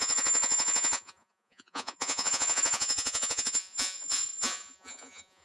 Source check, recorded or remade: remade